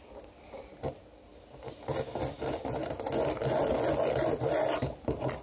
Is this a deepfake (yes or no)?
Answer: no